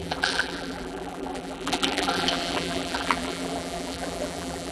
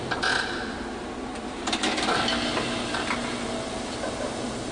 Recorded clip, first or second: second